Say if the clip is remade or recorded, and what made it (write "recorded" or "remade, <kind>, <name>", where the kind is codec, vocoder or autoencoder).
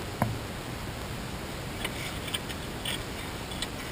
recorded